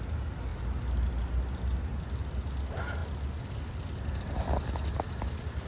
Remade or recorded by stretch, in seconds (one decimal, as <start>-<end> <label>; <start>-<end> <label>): 0.0-5.7 recorded